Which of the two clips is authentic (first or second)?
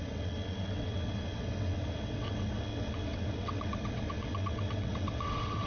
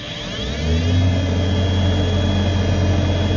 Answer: second